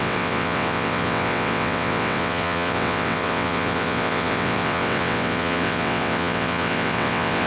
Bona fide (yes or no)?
no